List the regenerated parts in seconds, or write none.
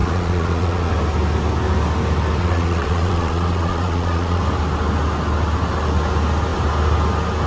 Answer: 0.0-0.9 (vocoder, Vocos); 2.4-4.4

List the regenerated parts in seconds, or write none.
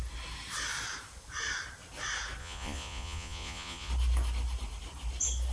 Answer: 2.4-3.9 (vocoder, Vocos)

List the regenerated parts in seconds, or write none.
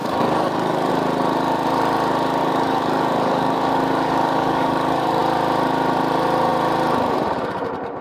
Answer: 0.0-0.9 (codec, DAC); 2.4-5.2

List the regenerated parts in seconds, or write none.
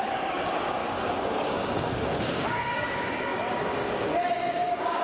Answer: 0.0-5.0 (codec, DAC)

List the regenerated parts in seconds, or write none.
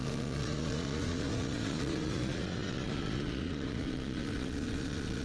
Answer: 0.0-5.2 (vocoder, Vocos)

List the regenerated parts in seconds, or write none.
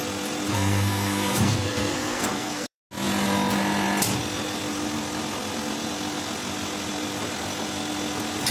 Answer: 0.5-2.8 (codec, SNAC)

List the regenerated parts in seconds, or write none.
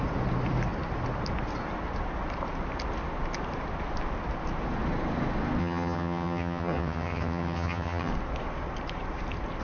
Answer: 5.6-8.1 (vocoder, HiFi-GAN)